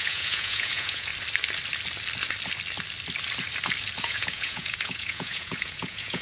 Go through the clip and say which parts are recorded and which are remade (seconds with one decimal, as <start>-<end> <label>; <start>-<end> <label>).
0.0-1.1 remade; 1.1-4.0 recorded; 4.0-6.2 remade